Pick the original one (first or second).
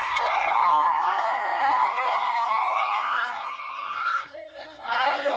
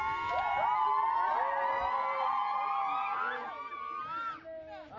second